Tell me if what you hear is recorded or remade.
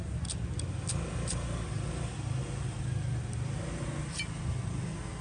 recorded